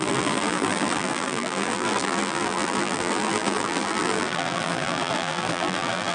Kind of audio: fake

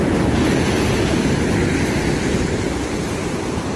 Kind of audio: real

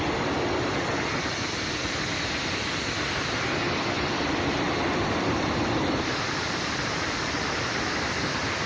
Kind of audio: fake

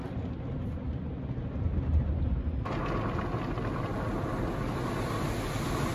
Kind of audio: real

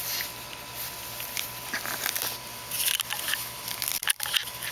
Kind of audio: real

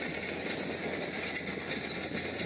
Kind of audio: real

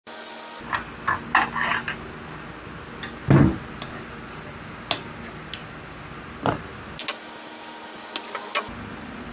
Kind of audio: real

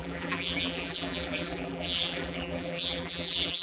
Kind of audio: fake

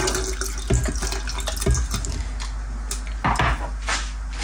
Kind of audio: real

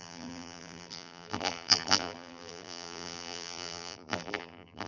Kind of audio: fake